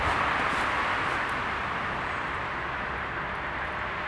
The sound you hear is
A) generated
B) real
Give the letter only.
B